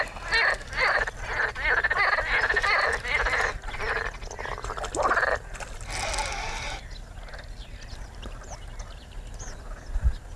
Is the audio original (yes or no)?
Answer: yes